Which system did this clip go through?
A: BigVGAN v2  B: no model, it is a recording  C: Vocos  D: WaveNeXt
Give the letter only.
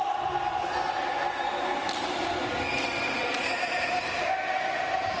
B